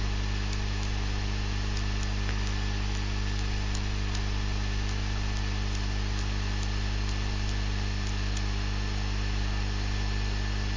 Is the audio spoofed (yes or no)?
no